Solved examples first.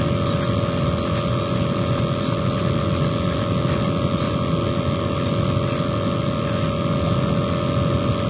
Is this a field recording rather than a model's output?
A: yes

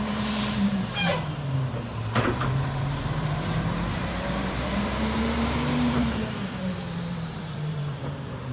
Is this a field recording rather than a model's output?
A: no